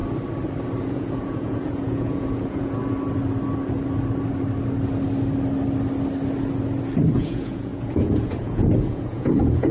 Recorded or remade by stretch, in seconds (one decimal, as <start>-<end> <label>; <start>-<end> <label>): 0.0-0.8 recorded; 0.8-2.8 remade; 2.8-7.1 recorded; 7.1-9.7 remade

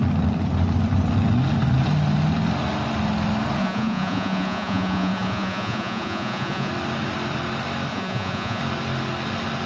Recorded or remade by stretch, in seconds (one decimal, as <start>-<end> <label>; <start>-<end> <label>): 0.0-3.6 recorded; 3.6-6.7 remade; 6.7-7.9 recorded; 7.9-8.6 remade; 8.6-9.7 recorded

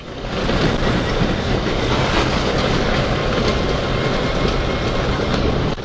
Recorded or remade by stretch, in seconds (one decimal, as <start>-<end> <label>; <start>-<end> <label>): 0.0-0.4 remade; 0.4-1.4 recorded; 1.4-3.2 remade; 3.2-5.1 recorded; 5.1-5.8 remade